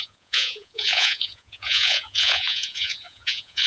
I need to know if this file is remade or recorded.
remade